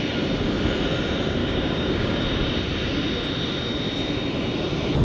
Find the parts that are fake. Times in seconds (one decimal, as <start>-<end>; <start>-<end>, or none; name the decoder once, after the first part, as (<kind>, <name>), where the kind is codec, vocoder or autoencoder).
1.4-2.2 (codec, DAC)